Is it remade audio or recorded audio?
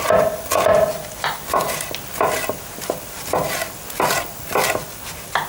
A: recorded